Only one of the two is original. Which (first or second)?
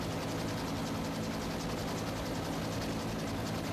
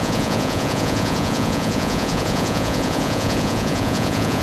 first